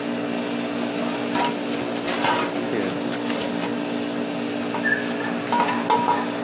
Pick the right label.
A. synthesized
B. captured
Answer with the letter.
B